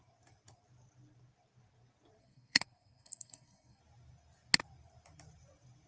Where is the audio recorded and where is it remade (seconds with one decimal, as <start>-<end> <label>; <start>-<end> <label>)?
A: 0.0-2.2 recorded; 2.2-3.8 remade; 3.8-5.9 recorded